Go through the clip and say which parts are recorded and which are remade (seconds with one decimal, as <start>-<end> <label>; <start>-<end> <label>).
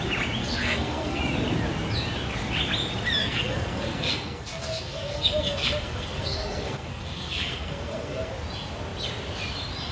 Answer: 0.0-0.4 recorded; 0.4-1.2 remade; 1.2-3.2 recorded; 3.2-8.3 remade; 8.3-9.9 recorded